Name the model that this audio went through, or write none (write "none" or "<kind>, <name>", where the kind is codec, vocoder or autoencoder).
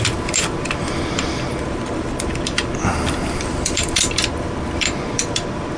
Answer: vocoder, BigVGAN v2